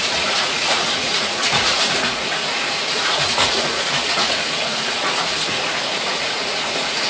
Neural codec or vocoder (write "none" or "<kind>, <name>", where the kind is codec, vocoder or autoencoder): vocoder, Vocos